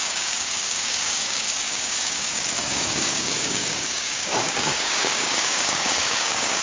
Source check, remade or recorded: remade